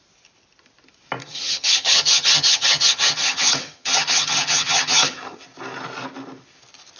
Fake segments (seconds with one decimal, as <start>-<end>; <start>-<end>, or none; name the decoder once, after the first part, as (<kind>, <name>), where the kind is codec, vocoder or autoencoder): 1.2-5.4 (vocoder, HiFi-GAN)

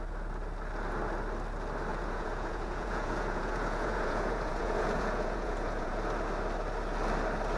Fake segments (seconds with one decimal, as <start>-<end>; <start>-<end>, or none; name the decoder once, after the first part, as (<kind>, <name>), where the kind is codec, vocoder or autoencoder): 1.9-6.0 (vocoder, Vocos)

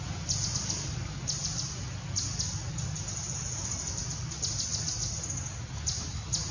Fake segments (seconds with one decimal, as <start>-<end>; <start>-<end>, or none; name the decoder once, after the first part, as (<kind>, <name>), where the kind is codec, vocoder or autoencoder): none

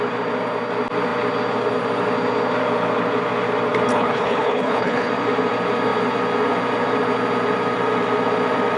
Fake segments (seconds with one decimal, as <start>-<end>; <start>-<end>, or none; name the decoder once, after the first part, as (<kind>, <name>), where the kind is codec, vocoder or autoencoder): 3.9-5.1 (codec, HILCodec)

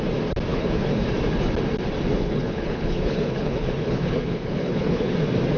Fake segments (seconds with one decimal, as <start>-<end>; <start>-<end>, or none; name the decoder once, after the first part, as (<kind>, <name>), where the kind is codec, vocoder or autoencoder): 0.5-1.0 (codec, HILCodec); 2.2-5.1

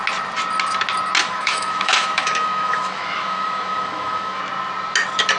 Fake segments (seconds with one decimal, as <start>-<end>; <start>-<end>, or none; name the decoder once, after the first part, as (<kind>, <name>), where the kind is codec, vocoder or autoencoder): 1.2-4.4 (autoencoder, DAC-VAE)